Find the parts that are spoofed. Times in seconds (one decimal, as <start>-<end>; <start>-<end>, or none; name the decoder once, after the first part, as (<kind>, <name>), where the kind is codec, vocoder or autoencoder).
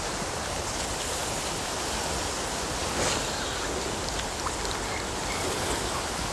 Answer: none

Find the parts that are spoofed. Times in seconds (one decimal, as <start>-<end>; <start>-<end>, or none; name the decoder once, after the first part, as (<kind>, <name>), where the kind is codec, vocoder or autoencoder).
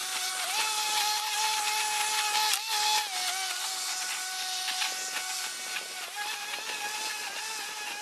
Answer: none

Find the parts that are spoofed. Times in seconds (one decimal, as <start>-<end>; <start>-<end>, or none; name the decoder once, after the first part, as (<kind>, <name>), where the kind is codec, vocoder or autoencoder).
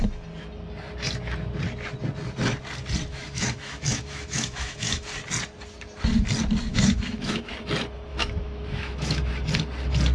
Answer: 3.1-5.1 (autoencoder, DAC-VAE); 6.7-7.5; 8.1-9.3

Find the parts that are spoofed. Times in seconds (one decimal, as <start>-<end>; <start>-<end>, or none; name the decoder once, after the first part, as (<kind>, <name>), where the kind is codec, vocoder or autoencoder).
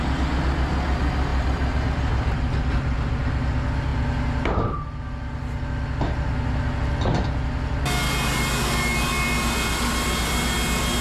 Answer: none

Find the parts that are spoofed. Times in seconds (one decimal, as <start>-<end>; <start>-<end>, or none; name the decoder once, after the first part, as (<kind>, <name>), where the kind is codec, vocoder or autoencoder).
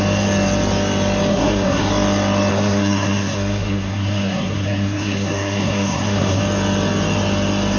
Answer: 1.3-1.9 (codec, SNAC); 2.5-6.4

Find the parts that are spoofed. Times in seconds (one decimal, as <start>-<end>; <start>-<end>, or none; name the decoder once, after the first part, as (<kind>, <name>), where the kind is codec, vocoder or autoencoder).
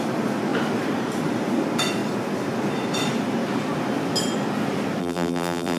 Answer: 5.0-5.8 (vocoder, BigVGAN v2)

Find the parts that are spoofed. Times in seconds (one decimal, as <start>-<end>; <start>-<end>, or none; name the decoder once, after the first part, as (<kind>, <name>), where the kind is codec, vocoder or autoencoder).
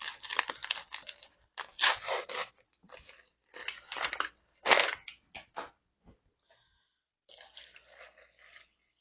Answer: none